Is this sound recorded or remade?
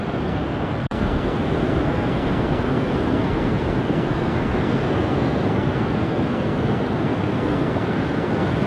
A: remade